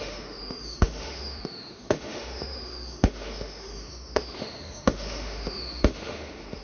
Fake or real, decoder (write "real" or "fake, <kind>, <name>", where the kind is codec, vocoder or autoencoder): fake, autoencoder, DAC-VAE